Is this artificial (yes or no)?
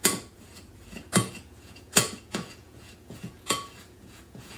yes